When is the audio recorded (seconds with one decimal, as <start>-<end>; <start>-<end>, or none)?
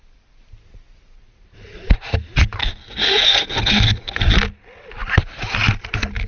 0.0-2.6; 4.2-6.3